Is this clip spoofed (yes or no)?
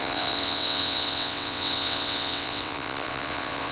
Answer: yes